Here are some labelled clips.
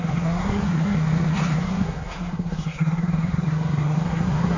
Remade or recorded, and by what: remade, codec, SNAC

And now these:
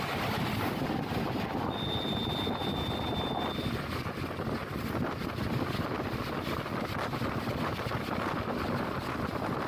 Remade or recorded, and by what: recorded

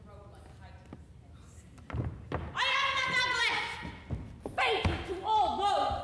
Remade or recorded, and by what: recorded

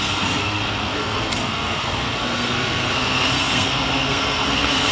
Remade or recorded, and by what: remade, codec, SNAC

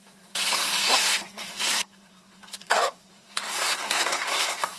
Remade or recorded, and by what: remade, codec, SNAC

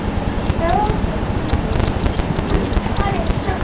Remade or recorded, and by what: recorded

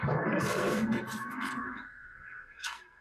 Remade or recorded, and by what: remade, codec, SNAC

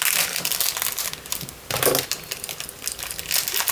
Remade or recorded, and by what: recorded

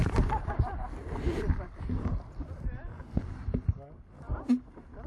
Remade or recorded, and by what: recorded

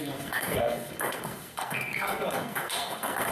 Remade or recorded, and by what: remade, codec, SNAC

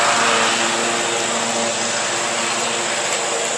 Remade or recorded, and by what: recorded